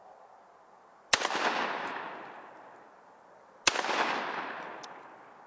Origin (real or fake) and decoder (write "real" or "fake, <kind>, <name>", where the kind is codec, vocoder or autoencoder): real